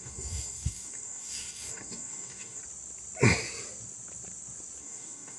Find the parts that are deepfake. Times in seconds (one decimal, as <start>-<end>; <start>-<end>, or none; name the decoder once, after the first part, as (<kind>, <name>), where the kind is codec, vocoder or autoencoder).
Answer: 0.0-2.6 (codec, DAC); 4.8-5.4